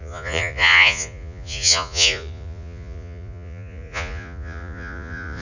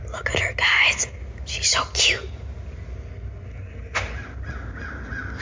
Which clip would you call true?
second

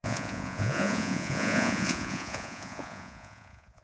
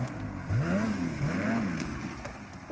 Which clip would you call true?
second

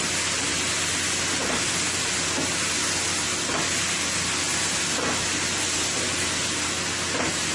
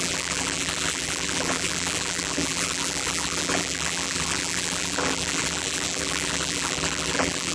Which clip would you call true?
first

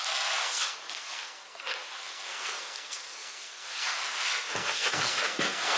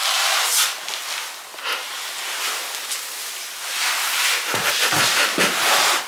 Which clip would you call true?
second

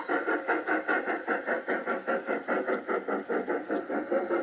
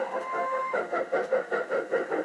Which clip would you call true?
first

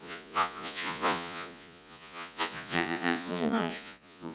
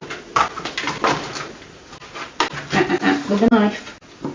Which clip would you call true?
second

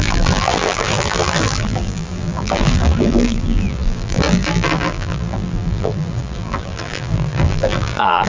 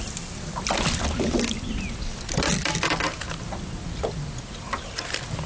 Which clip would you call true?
second